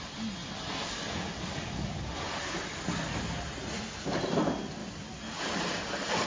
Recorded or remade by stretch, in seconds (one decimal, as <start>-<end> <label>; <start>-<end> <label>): 0.0-6.3 recorded